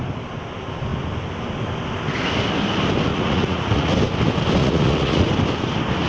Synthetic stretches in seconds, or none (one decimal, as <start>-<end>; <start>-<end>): 3.1-3.9; 4.6-5.3